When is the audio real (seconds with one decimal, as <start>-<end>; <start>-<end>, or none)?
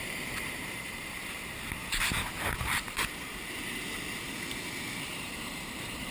1.8-5.1